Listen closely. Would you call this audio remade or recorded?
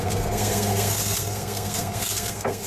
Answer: remade